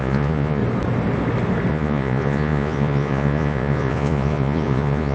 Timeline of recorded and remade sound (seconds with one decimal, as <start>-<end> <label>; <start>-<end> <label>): 0.0-0.6 remade; 0.6-1.7 recorded; 1.7-5.1 remade